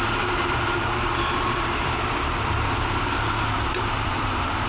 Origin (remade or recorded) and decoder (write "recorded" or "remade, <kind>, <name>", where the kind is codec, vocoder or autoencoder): remade, vocoder, BigVGAN v2